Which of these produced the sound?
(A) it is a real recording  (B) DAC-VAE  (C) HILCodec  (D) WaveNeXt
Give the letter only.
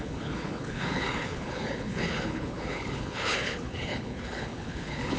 C